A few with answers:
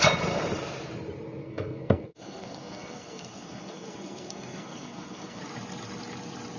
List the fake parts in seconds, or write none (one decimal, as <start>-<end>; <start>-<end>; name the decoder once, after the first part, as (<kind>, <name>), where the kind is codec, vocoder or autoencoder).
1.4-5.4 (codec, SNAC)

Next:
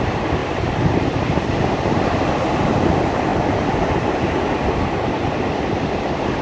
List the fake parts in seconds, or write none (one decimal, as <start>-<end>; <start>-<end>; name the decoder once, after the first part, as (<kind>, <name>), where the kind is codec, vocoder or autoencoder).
none

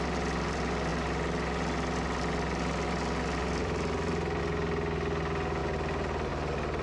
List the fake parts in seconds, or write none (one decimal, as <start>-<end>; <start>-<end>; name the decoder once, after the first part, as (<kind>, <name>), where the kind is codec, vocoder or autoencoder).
none